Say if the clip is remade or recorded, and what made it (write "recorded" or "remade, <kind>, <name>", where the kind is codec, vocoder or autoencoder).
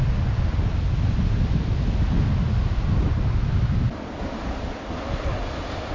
recorded